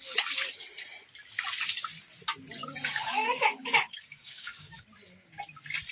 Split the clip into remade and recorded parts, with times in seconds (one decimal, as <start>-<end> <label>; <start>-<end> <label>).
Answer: 0.0-2.6 recorded; 2.6-4.8 remade; 4.8-5.9 recorded